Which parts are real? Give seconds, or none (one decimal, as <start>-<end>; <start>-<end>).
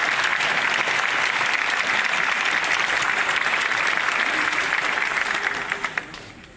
0.0-3.0